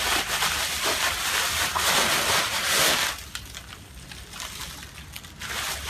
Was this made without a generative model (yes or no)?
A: yes